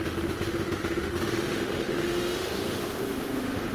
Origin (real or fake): fake